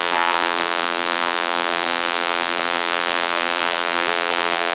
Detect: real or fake fake